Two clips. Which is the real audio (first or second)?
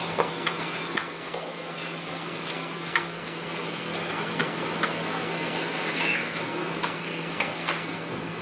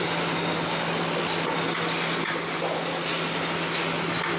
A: second